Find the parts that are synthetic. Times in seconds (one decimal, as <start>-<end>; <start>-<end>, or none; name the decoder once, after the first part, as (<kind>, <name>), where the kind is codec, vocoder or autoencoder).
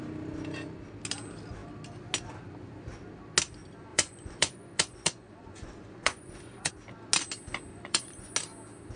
3.9-6.7 (vocoder, Vocos); 7.7-8.3